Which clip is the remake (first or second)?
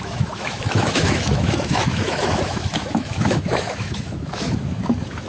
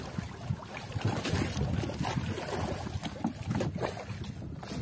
first